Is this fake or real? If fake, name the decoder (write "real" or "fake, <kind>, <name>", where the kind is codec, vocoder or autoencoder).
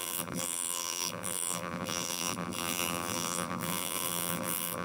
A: fake, vocoder, BigVGAN v2